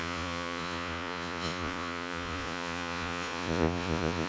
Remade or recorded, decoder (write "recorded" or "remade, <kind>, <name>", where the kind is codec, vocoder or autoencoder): remade, vocoder, Vocos